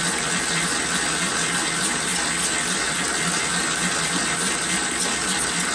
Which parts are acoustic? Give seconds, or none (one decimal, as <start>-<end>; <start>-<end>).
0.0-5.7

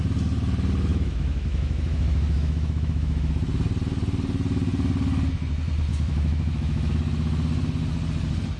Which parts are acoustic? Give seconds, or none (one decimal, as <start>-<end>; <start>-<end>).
0.0-0.9; 3.3-5.9; 6.9-8.6

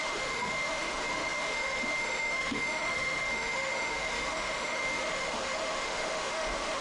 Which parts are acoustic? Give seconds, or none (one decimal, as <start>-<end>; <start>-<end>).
none

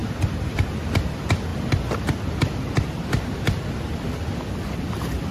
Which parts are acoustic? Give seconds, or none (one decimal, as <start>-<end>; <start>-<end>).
0.0-5.3

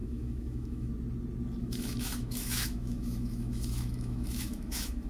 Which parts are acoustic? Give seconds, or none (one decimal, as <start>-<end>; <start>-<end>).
0.9-1.6